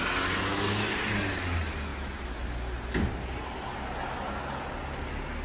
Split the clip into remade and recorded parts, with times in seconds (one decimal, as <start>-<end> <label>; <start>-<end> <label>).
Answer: 0.0-5.4 recorded